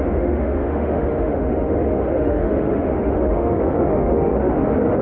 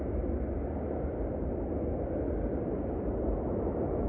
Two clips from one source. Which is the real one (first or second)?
second